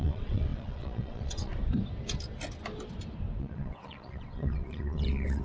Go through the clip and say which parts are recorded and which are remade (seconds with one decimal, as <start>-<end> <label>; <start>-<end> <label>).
0.0-1.5 remade; 1.5-3.4 recorded; 3.4-5.4 remade

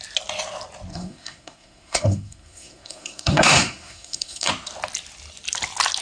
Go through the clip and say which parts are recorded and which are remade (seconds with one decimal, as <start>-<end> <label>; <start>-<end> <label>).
0.0-0.9 recorded; 0.9-4.5 remade; 4.5-6.0 recorded

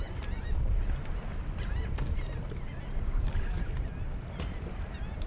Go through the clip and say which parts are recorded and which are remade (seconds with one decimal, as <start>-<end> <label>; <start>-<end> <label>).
0.0-3.2 recorded; 3.2-3.6 remade; 3.6-5.3 recorded